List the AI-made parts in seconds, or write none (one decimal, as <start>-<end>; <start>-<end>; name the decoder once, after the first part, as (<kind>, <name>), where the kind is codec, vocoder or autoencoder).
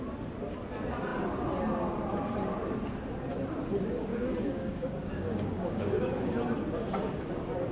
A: 4.1-6.3 (codec, DAC)